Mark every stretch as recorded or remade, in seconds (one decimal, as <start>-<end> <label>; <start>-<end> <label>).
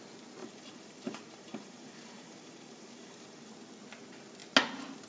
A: 0.0-0.4 recorded; 0.4-3.5 remade; 3.5-5.1 recorded